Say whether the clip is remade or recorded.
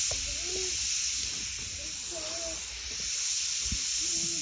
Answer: recorded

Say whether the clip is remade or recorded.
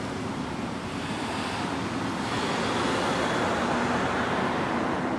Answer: recorded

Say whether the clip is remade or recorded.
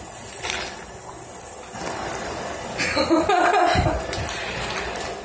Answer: recorded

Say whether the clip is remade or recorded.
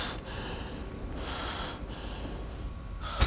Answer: recorded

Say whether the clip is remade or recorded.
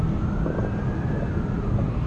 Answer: recorded